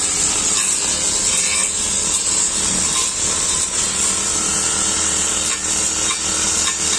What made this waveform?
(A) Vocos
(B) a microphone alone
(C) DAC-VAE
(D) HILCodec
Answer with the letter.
B